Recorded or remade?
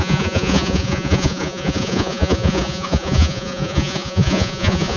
remade